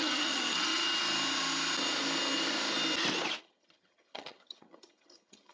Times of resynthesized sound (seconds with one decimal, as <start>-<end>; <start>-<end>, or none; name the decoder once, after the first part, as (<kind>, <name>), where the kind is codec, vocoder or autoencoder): 0.0-0.8 (vocoder, HiFi-GAN); 3.4-5.5